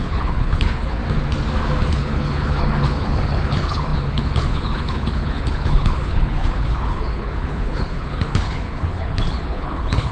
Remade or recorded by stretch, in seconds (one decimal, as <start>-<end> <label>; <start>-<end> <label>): 0.0-1.0 remade; 1.0-1.9 recorded; 1.9-10.1 remade